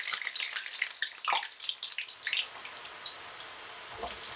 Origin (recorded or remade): recorded